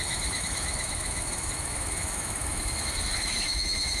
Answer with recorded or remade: remade